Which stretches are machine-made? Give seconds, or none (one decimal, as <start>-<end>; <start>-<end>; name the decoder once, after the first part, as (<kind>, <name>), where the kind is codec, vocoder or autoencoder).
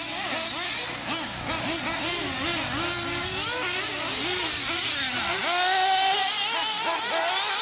none